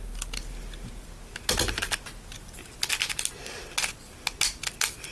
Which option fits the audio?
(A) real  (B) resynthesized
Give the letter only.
A